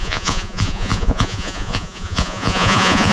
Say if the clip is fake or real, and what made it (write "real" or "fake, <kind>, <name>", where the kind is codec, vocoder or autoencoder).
fake, vocoder, Vocos